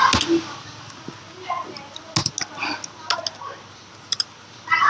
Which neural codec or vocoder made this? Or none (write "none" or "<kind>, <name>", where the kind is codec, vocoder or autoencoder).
none